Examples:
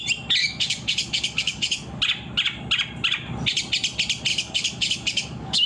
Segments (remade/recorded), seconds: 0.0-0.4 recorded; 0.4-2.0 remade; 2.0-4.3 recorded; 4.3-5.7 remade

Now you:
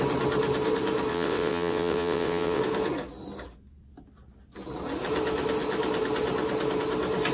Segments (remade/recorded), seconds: 0.0-1.1 recorded; 1.1-2.6 remade; 2.6-7.3 recorded

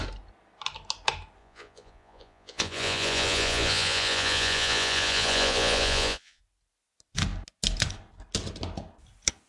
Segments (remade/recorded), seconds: 0.0-1.4 recorded; 1.4-6.4 remade; 6.4-9.5 recorded